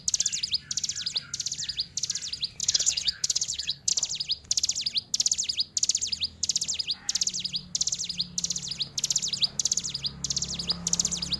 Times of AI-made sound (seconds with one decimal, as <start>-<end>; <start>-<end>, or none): 2.6-3.9